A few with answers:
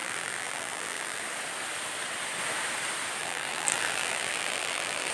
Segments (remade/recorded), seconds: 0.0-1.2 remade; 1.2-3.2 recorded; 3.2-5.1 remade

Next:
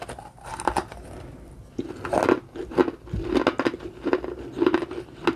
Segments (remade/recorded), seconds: 0.0-0.5 recorded; 0.5-1.1 remade; 1.1-5.4 recorded

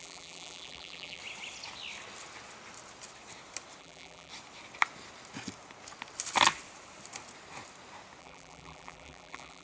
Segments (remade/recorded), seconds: 0.0-1.2 remade; 1.2-3.8 recorded; 3.8-4.3 remade; 4.3-8.2 recorded; 8.2-9.6 remade

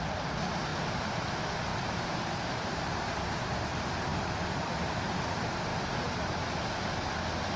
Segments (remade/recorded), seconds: 0.0-0.7 recorded; 0.7-1.2 remade; 1.2-1.7 recorded; 1.7-2.8 remade; 2.8-7.6 recorded

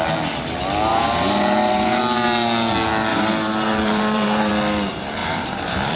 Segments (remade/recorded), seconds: 0.0-0.9 recorded; 0.9-2.0 remade; 2.0-3.1 recorded; 3.1-4.5 remade; 4.5-5.2 recorded; 5.2-5.9 remade